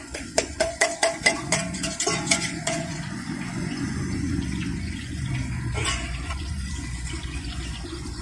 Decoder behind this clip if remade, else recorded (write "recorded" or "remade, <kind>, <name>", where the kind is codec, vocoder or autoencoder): remade, vocoder, Vocos